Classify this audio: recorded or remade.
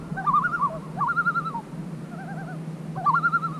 recorded